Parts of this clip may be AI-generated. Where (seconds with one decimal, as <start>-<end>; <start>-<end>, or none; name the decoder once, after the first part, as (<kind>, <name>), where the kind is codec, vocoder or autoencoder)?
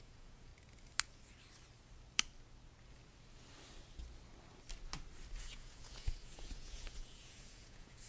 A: 0.0-0.5 (vocoder, Vocos); 5.4-8.1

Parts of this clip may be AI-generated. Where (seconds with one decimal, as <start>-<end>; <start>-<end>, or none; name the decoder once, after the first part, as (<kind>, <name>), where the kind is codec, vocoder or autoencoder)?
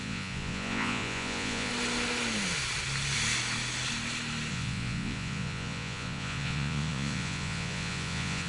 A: 0.0-1.7 (vocoder, Vocos); 4.5-8.5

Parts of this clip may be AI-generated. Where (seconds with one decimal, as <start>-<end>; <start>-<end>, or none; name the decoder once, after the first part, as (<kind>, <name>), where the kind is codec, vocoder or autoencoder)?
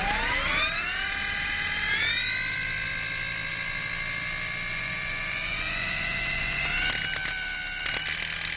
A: 4.7-6.7 (vocoder, Vocos)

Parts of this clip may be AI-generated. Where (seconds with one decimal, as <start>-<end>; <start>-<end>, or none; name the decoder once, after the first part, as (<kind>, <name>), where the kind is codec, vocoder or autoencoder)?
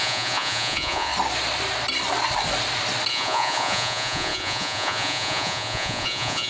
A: 0.0-1.1 (vocoder, Vocos); 3.1-6.5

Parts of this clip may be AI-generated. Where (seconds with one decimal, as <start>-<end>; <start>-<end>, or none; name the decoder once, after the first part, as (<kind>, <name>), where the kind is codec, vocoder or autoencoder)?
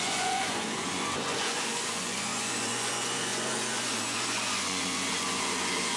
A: 0.0-6.0 (vocoder, Vocos)